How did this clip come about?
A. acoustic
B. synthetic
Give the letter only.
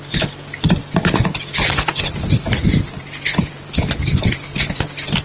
B